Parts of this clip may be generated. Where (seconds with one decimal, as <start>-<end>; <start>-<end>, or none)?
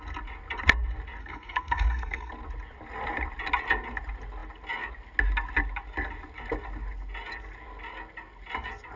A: 1.2-2.3